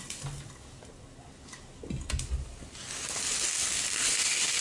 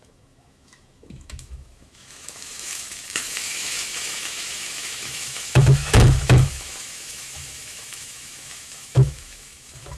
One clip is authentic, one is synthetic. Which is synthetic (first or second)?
second